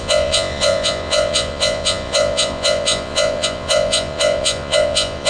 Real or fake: fake